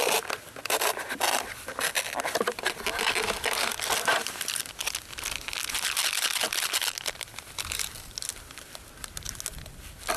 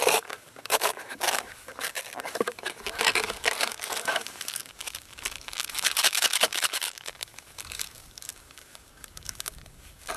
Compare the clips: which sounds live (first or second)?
first